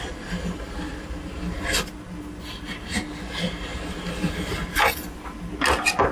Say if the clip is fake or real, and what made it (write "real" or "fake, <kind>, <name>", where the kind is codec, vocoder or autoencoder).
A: real